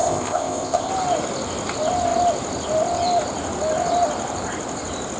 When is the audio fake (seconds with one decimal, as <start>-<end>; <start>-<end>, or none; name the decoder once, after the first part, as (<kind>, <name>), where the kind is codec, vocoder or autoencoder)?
0.0-0.9 (codec, ZipCodec)